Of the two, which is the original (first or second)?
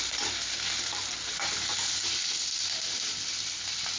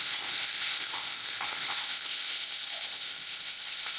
first